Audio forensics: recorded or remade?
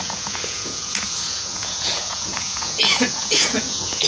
remade